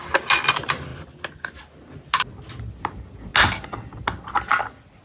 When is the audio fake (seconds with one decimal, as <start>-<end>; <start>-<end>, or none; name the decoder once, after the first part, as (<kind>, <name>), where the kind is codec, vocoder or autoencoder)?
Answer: none